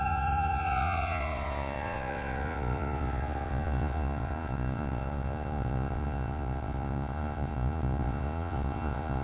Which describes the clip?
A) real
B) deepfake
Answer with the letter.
B